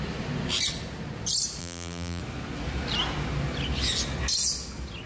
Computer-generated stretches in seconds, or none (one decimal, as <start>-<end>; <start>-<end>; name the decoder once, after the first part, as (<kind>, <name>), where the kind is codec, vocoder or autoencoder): 1.6-2.2 (vocoder, BigVGAN v2)